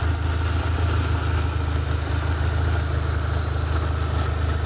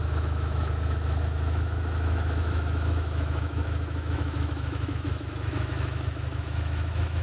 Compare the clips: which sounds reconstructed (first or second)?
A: second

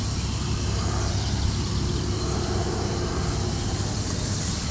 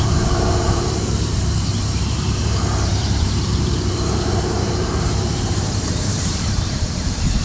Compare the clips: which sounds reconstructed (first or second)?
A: second